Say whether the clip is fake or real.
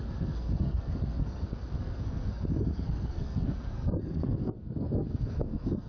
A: fake